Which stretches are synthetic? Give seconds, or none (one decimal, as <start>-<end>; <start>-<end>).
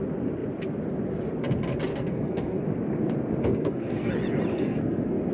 1.9-2.6; 3.4-4.1; 4.5-5.3